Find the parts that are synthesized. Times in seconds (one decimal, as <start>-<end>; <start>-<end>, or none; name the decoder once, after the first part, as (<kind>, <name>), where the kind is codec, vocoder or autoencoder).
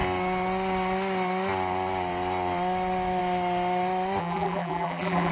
4.2-5.3 (vocoder, BigVGAN v2)